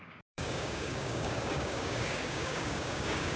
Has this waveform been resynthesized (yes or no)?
yes